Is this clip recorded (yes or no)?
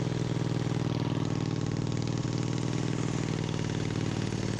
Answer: yes